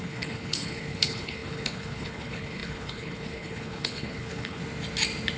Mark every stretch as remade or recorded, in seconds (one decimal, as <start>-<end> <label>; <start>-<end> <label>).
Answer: 0.0-4.6 remade; 4.6-5.4 recorded